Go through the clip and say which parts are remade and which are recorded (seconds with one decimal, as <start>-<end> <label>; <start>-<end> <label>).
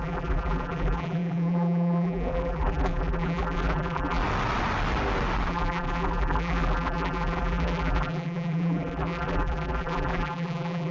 0.0-4.2 remade; 4.2-5.5 recorded; 5.5-10.9 remade